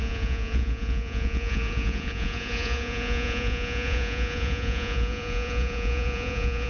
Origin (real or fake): fake